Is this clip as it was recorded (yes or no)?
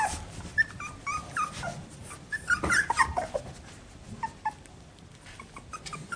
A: yes